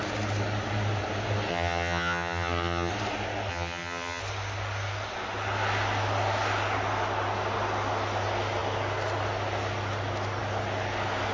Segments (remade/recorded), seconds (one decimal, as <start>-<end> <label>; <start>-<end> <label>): 0.0-1.5 recorded; 1.5-2.9 remade; 2.9-3.5 recorded; 3.5-4.2 remade; 4.2-11.3 recorded